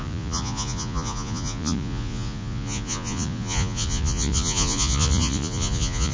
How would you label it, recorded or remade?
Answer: remade